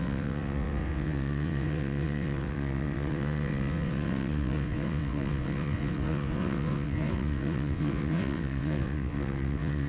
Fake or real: fake